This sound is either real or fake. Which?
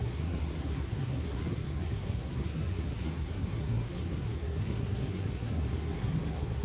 fake